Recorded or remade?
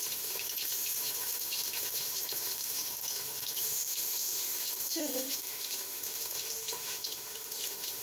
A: remade